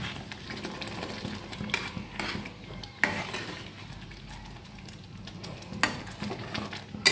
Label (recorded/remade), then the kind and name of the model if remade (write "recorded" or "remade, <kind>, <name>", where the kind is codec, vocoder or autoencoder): recorded